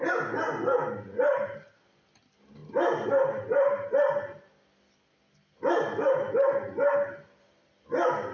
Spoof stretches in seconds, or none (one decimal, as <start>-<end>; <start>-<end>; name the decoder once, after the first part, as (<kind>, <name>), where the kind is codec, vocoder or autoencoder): none